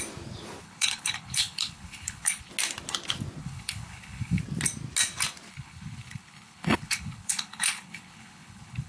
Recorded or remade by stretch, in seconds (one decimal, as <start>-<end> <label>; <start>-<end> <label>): 0.0-0.6 recorded; 0.6-2.5 remade; 2.5-3.4 recorded; 3.4-4.4 remade; 4.4-5.5 recorded; 5.5-8.9 remade